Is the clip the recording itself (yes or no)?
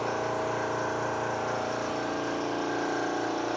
yes